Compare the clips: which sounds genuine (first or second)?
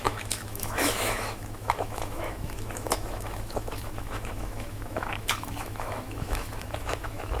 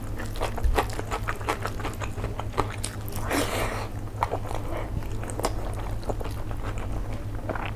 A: second